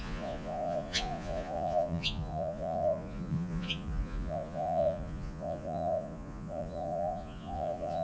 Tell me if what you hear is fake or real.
fake